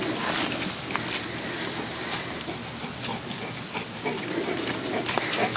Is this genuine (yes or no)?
yes